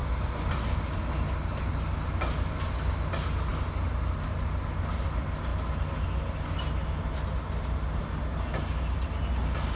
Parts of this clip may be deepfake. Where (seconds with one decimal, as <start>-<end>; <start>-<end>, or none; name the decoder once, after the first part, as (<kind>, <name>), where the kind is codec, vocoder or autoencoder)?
none